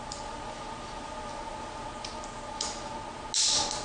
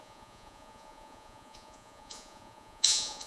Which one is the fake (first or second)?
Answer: second